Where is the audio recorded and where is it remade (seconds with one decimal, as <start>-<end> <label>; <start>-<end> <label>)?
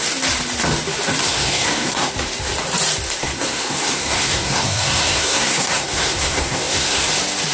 0.0-1.2 recorded; 1.2-2.1 remade; 2.1-3.2 recorded; 3.2-7.1 remade; 7.1-7.5 recorded